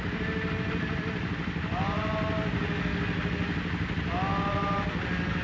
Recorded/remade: recorded